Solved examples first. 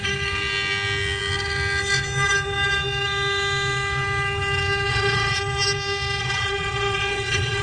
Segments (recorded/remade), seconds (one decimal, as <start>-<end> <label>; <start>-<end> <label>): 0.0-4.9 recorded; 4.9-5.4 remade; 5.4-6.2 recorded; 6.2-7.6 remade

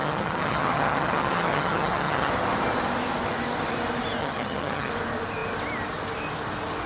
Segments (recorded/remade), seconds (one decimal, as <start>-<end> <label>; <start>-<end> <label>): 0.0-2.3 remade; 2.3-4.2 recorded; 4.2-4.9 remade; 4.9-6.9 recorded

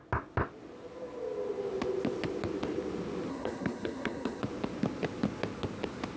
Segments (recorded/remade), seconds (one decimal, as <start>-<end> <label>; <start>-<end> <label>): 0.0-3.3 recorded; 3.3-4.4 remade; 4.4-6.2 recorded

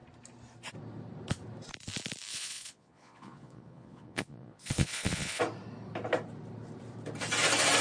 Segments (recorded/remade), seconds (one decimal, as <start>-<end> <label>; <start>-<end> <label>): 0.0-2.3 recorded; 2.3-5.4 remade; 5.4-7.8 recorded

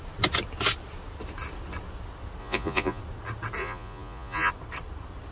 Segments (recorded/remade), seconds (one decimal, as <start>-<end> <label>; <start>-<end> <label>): 0.0-2.4 recorded; 2.4-3.0 remade; 3.0-3.6 recorded; 3.6-4.5 remade; 4.5-5.3 recorded

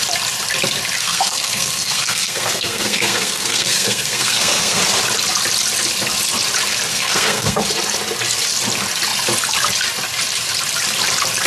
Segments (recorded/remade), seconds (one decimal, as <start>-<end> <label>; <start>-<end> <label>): 0.0-1.0 recorded; 1.0-4.8 remade; 4.8-6.9 recorded; 6.9-7.6 remade; 7.6-11.5 recorded

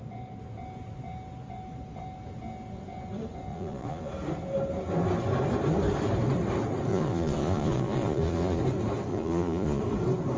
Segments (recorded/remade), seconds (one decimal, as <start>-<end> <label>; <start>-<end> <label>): 0.0-3.5 recorded; 3.5-4.1 remade; 4.1-6.9 recorded; 6.9-8.6 remade; 8.6-9.1 recorded; 9.1-9.8 remade; 9.8-10.4 recorded